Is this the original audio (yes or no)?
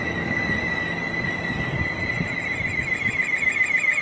yes